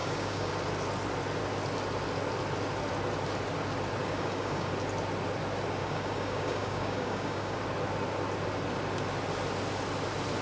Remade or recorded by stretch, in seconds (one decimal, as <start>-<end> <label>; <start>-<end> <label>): 0.0-0.5 remade; 0.5-4.0 recorded; 4.0-4.7 remade; 4.7-5.8 recorded; 5.8-7.6 remade; 7.6-10.4 recorded